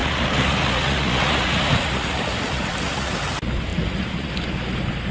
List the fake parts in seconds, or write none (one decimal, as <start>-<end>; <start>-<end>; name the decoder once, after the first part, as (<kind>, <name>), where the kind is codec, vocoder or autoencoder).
0.0-3.1 (vocoder, Vocos); 3.7-4.3

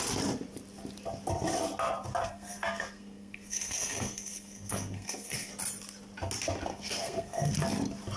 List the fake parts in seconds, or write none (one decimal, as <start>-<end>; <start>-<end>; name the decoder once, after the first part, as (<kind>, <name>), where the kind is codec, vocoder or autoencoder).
2.2-5.5 (codec, SNAC); 6.7-7.5

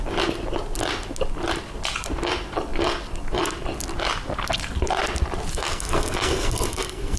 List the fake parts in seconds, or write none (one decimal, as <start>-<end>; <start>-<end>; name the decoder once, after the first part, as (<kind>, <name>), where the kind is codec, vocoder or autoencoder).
5.5-7.2 (codec, SNAC)

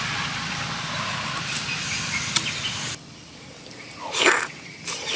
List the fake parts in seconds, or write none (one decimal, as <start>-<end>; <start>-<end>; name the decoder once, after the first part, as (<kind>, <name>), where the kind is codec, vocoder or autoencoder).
0.0-1.7 (vocoder, BigVGAN v2); 3.1-5.2

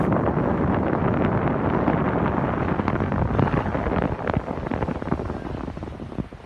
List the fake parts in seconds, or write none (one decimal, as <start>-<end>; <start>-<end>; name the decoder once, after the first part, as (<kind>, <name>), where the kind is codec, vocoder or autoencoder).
0.5-1.0 (autoencoder, DAC-VAE)

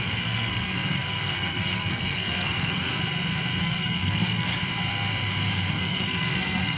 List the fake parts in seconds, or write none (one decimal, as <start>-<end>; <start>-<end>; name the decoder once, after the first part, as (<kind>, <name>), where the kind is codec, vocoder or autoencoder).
0.0-2.9 (codec, SNAC); 3.6-4.5; 5.7-6.8